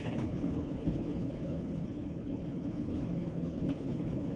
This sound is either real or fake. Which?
fake